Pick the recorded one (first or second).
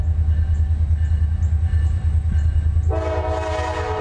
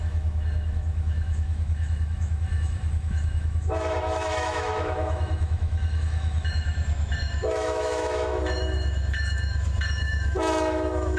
first